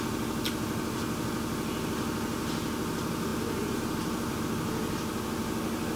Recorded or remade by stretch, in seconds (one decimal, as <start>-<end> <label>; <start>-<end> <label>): 0.0-6.0 recorded